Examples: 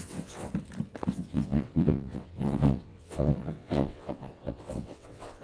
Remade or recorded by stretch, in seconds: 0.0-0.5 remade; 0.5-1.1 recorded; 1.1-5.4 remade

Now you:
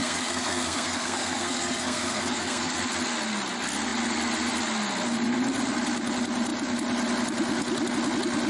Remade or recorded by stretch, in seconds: 0.0-2.7 remade; 2.7-8.5 recorded

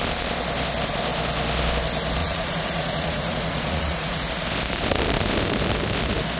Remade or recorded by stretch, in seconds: 0.0-2.2 recorded; 2.2-4.3 remade; 4.3-6.4 recorded

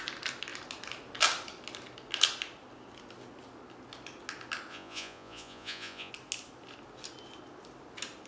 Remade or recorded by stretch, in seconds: 0.0-4.7 recorded; 4.7-6.1 remade; 6.1-8.3 recorded

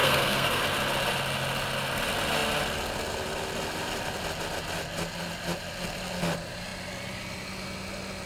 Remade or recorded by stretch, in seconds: 0.0-0.6 remade; 0.6-8.3 recorded